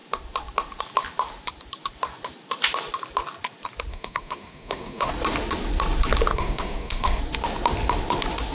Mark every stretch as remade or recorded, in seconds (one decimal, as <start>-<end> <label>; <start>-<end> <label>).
0.0-3.9 recorded; 3.9-5.1 remade; 5.1-6.3 recorded; 6.3-7.2 remade; 7.2-8.5 recorded